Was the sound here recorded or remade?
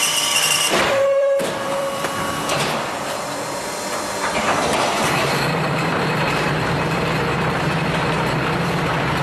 remade